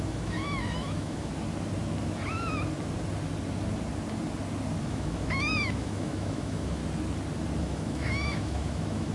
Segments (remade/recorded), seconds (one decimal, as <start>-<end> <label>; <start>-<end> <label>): 0.0-1.3 remade; 1.3-4.8 recorded; 4.8-6.8 remade; 6.8-7.6 recorded; 7.6-9.1 remade